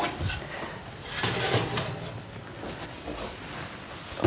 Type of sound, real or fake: real